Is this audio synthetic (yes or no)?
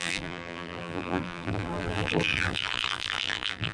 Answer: yes